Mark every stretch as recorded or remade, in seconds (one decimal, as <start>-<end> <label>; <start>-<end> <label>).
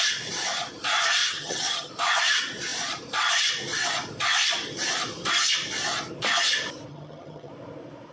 0.0-1.2 recorded; 1.2-1.9 remade; 1.9-6.9 recorded; 6.9-7.5 remade; 7.5-8.1 recorded